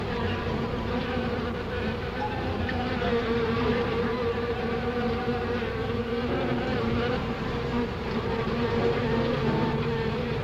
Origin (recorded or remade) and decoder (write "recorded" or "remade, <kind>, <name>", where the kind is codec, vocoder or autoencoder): remade, vocoder, BigVGAN v2